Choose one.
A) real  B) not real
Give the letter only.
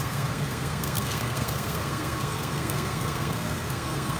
B